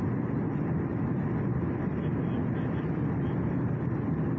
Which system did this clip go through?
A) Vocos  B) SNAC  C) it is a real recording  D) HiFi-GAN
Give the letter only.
C